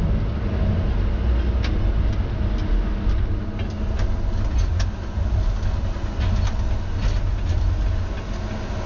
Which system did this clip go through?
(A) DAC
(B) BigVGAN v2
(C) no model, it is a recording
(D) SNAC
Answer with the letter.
C